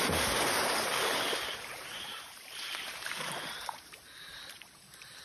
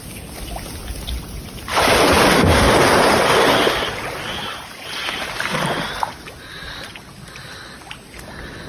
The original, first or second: second